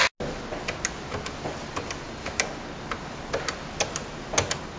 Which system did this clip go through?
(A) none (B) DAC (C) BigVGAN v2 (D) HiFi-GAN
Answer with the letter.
A